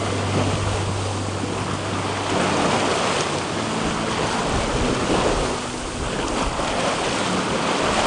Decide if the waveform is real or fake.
real